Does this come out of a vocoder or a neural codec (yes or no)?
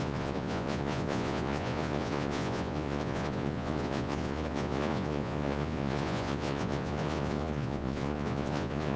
yes